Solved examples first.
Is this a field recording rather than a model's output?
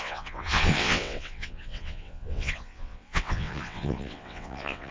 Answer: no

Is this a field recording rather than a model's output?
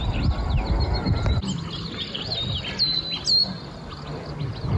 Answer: yes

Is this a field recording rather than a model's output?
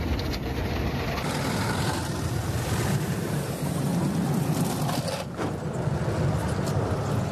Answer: yes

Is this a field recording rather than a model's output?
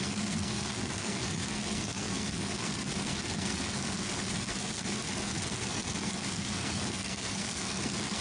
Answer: no